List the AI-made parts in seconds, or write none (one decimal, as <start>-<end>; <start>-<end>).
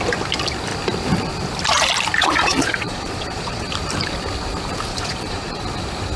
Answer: 2.2-3.7; 4.9-5.6